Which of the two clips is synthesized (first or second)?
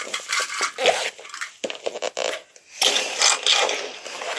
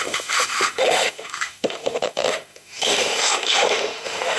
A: second